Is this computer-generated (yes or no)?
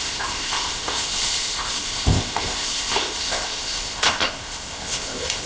yes